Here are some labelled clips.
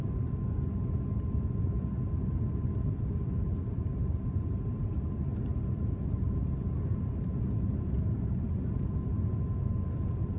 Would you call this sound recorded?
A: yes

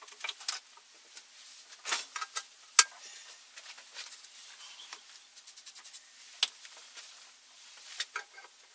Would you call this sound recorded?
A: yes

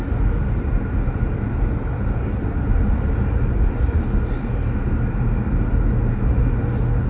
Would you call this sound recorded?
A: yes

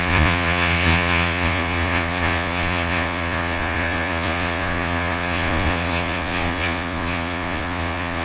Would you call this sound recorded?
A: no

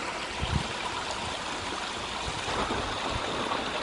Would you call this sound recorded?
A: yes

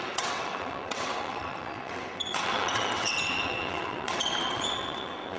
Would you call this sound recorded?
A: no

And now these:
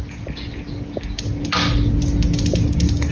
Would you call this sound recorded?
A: yes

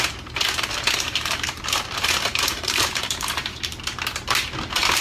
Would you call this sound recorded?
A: no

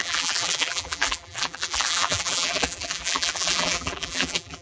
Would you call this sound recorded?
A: no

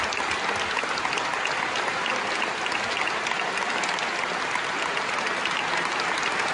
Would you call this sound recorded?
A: yes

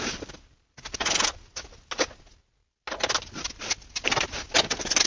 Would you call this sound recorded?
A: yes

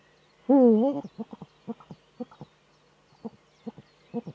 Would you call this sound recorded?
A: yes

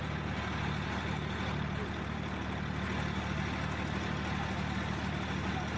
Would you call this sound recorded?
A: yes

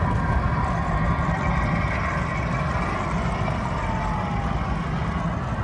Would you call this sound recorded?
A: yes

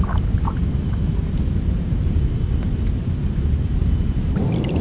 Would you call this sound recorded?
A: yes